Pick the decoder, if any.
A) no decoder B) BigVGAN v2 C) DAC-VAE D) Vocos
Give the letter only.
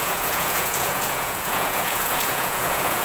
D